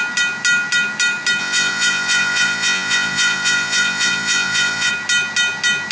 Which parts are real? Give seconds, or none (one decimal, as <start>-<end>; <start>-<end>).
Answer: 0.0-1.4; 4.9-5.9